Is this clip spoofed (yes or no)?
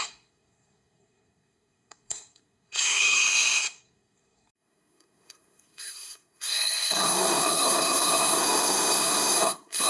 yes